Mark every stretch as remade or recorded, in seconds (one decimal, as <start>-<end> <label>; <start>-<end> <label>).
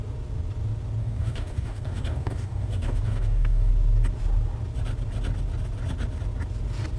0.0-1.0 recorded; 1.0-3.7 remade; 3.7-7.0 recorded